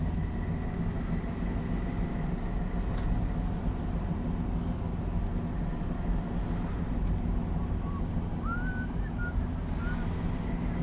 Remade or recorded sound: recorded